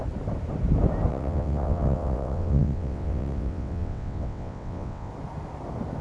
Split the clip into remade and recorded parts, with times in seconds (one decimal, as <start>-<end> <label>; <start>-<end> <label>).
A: 0.0-1.1 recorded; 1.1-5.1 remade; 5.1-6.0 recorded